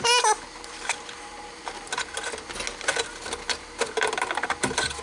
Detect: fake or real real